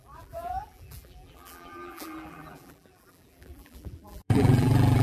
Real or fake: fake